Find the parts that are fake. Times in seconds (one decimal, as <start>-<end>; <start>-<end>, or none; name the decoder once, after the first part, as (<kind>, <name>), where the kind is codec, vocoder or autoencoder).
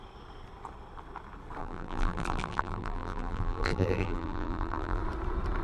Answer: 1.6-5.0 (vocoder, BigVGAN v2)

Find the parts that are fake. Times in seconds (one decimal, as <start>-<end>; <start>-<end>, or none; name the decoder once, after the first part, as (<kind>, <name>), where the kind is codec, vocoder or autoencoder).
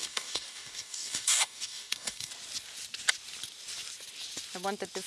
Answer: 0.0-2.3 (codec, DAC)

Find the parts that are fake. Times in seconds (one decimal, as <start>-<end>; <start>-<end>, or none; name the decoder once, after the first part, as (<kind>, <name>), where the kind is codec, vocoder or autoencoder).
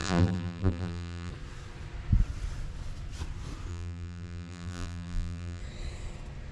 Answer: 0.0-1.3 (vocoder, BigVGAN v2); 3.7-5.6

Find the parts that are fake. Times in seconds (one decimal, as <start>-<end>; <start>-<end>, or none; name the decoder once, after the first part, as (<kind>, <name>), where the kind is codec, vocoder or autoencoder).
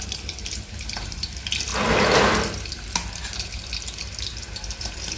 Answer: 0.0-1.7 (vocoder, BigVGAN v2); 4.8-5.2